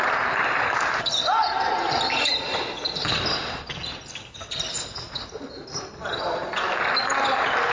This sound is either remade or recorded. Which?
recorded